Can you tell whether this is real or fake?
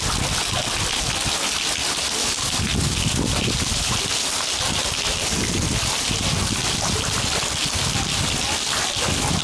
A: real